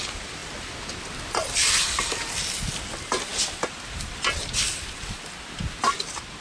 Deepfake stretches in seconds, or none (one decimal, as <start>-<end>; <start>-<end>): none